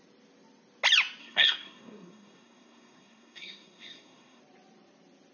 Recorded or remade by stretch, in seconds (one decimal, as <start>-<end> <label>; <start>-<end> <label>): 0.0-1.2 recorded; 1.2-4.4 remade; 4.4-5.3 recorded

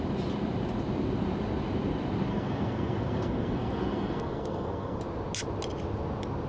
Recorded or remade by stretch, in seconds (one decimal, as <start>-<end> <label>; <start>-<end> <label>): 0.0-2.3 recorded; 2.3-5.0 remade; 5.0-6.5 recorded

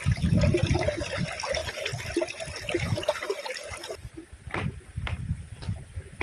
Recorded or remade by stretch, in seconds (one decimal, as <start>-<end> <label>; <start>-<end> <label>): 0.0-6.2 recorded